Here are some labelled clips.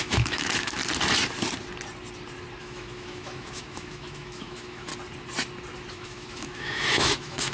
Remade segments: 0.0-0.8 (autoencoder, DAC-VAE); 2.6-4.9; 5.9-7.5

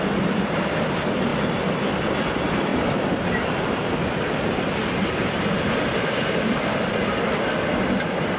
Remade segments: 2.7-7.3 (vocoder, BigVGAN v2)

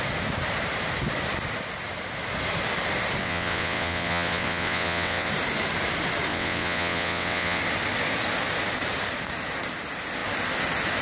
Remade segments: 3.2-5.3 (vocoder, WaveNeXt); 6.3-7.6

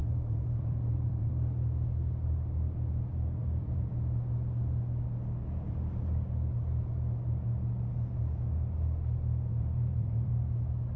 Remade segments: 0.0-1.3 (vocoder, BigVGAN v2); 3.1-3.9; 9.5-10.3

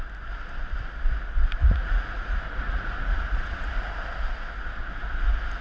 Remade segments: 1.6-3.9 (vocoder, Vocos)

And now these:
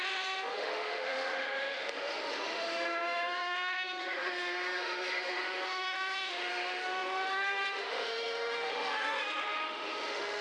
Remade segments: 0.0-10.4 (autoencoder, DAC-VAE)

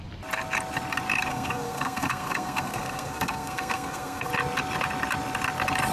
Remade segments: 1.3-4.3 (codec, SNAC)

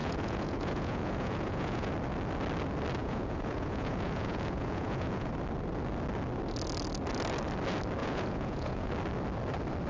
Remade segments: 0.0-1.9 (vocoder, Vocos); 3.0-5.3; 8.0-8.9